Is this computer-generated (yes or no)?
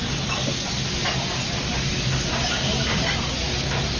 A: no